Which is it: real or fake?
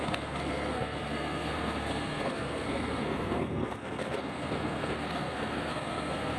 fake